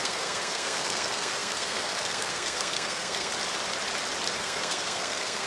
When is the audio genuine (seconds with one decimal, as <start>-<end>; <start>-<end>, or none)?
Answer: 3.3-4.4